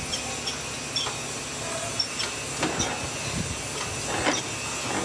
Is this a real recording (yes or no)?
yes